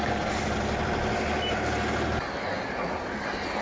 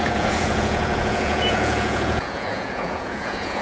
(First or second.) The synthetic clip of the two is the second